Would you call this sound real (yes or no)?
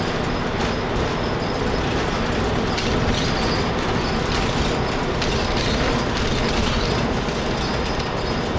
yes